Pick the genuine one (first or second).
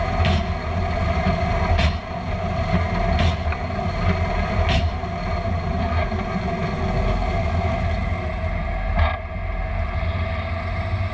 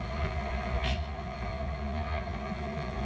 first